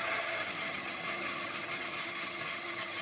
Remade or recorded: remade